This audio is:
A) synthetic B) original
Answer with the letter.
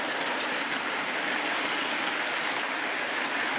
B